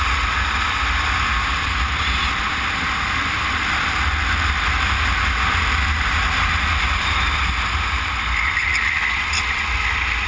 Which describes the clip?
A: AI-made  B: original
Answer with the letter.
B